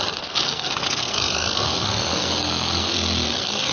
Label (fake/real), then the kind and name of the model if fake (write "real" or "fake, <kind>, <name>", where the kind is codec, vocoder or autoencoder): fake, codec, SNAC